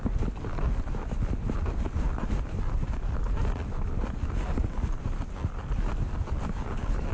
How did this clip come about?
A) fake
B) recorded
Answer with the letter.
B